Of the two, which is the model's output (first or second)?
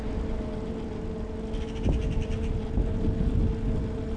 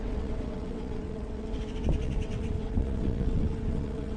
second